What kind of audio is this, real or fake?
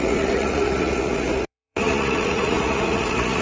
fake